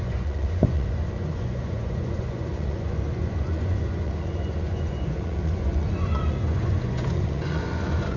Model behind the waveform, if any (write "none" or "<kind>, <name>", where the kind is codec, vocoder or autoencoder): vocoder, Vocos